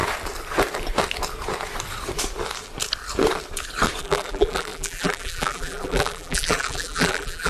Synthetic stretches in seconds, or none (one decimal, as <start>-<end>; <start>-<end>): 4.0-7.5